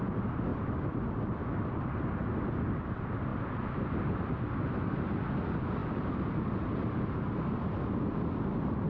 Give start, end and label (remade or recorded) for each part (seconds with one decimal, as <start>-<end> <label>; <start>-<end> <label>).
0.0-0.5 recorded; 0.5-1.4 remade; 1.4-3.3 recorded; 3.3-4.3 remade; 4.3-5.8 recorded; 5.8-6.4 remade; 6.4-8.9 recorded